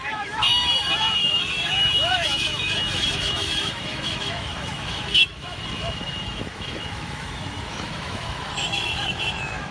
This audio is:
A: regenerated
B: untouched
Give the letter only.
A